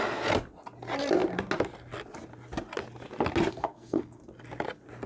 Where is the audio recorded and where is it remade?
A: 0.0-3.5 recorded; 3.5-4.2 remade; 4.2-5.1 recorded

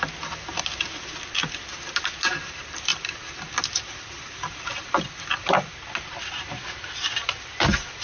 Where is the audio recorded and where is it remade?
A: 0.0-8.0 recorded

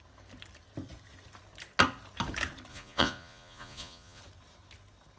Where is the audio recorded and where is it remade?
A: 0.0-2.7 recorded; 2.7-4.2 remade; 4.2-5.2 recorded

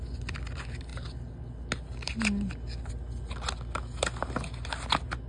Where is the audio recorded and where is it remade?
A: 0.0-5.3 recorded

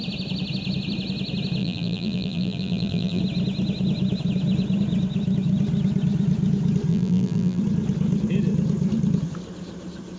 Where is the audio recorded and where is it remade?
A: 0.0-1.6 recorded; 1.6-3.2 remade; 3.2-6.9 recorded; 6.9-7.6 remade; 7.6-10.2 recorded

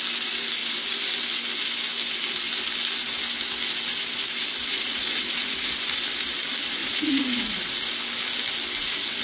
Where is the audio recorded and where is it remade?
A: 0.0-4.7 recorded; 4.7-5.7 remade; 5.7-6.8 recorded; 6.8-7.7 remade; 7.7-9.2 recorded

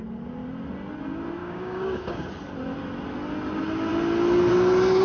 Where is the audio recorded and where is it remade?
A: 0.0-1.4 recorded; 1.4-2.3 remade; 2.3-5.0 recorded

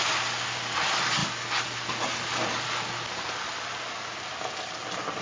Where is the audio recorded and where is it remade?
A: 0.0-5.2 recorded